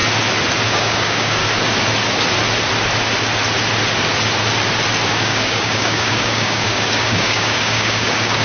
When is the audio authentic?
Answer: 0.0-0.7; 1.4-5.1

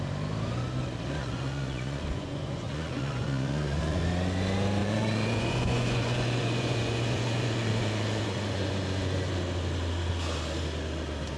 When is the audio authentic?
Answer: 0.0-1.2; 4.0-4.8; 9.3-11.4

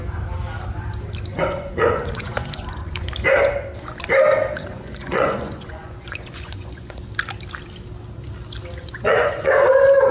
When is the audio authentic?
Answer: 0.0-1.3; 3.1-4.6; 7.1-8.8; 9.5-10.1

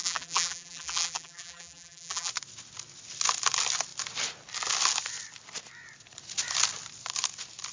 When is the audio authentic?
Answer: 2.3-7.7